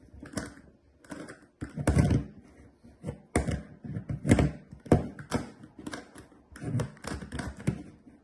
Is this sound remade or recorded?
recorded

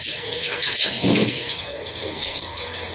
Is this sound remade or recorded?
remade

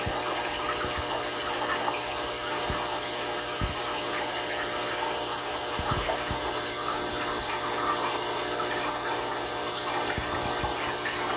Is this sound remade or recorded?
recorded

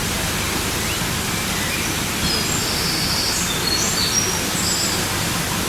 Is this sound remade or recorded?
recorded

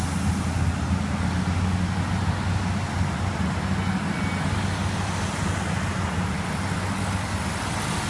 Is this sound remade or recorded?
recorded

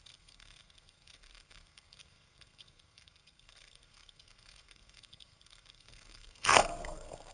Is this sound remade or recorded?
remade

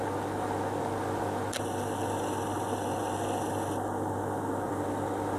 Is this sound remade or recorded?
recorded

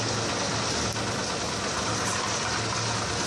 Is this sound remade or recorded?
recorded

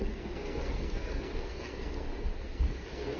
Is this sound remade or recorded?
remade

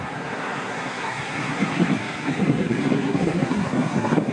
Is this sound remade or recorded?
remade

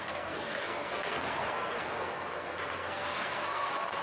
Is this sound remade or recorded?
remade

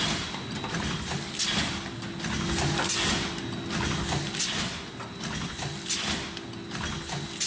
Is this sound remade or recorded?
recorded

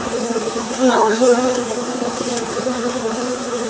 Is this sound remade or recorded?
remade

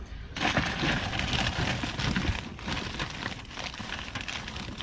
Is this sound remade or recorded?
recorded